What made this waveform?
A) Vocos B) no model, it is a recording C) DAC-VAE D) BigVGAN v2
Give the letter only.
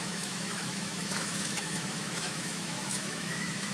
C